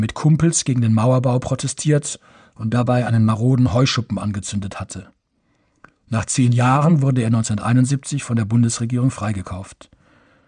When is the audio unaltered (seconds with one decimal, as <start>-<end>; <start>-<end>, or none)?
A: 0.0-2.1; 3.3-5.4; 6.9-10.5